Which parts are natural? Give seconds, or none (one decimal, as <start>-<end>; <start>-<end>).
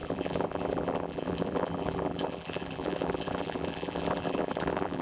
none